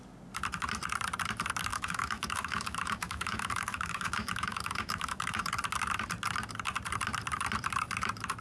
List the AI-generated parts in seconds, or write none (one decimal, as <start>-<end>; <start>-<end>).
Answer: 1.7-5.5